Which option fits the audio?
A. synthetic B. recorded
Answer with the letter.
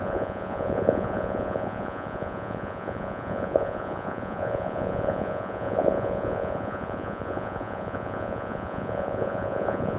A